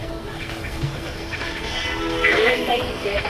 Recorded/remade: remade